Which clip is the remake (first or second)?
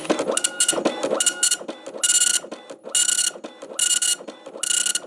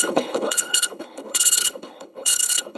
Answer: second